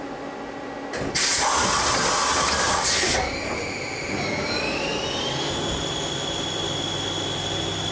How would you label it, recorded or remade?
recorded